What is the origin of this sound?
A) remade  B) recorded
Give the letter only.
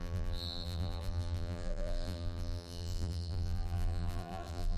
A